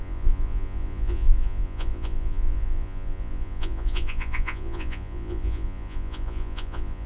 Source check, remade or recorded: remade